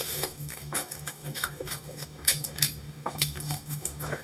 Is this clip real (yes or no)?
no